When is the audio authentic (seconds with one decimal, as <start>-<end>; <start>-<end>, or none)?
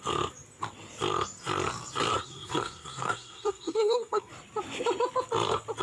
0.0-2.1; 4.3-5.8